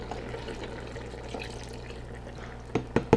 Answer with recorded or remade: recorded